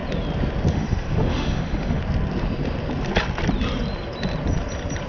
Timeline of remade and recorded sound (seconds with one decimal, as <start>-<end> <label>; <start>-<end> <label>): 0.0-0.7 recorded; 0.7-2.0 remade; 2.0-5.1 recorded